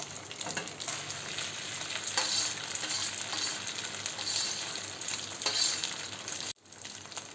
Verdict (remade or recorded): recorded